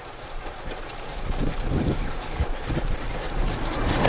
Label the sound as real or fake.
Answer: real